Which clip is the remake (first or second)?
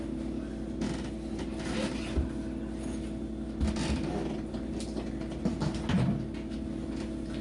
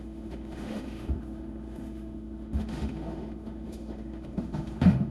second